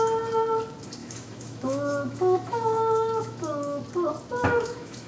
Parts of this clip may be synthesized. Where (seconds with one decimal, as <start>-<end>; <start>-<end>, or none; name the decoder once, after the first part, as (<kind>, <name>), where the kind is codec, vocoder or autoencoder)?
1.0-3.8 (autoencoder, DAC-VAE); 4.4-5.1